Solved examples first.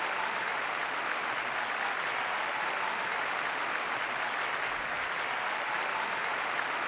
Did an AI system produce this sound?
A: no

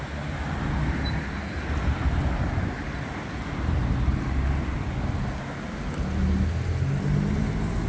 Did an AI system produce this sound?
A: no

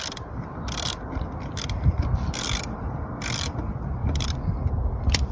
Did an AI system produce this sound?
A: no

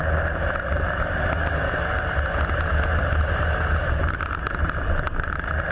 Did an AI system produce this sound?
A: no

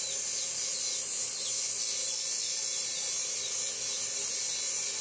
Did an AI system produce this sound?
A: no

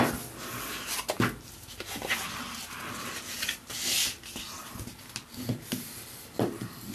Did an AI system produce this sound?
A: no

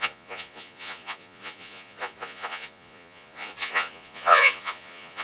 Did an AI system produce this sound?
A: yes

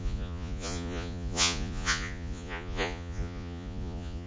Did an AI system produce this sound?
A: yes